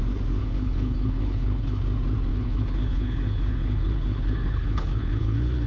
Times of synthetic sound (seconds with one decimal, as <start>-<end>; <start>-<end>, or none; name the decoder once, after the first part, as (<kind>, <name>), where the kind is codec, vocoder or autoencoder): 0.4-1.8 (codec, HILCodec); 2.3-5.7